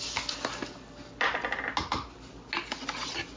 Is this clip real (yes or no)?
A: yes